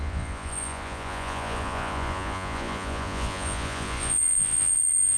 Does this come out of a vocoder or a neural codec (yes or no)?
yes